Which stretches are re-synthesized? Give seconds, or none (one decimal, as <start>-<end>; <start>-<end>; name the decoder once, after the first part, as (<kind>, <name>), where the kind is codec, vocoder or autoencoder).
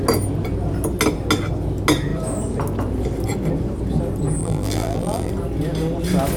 4.4-5.3 (vocoder, BigVGAN v2)